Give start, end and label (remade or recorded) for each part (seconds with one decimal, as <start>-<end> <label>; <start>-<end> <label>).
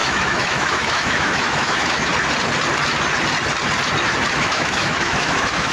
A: 0.0-2.1 remade; 2.1-4.3 recorded; 4.3-5.7 remade